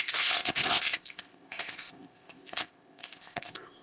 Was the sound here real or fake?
fake